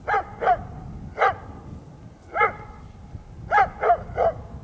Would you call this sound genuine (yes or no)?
yes